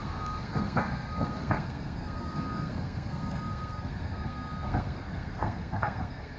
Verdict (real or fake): fake